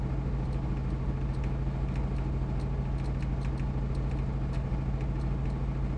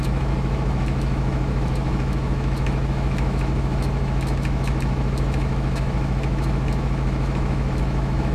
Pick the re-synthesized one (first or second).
second